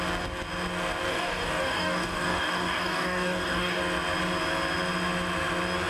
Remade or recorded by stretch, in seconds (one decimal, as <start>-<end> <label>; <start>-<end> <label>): 0.0-1.1 recorded; 1.1-3.8 remade; 3.8-5.9 recorded